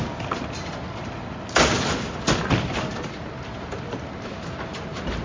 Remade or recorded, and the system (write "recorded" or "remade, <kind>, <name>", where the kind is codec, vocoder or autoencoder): recorded